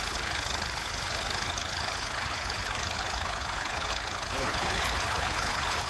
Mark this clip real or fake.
fake